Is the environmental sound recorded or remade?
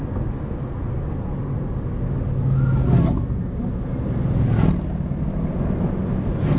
recorded